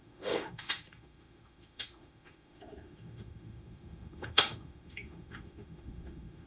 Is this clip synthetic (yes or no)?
yes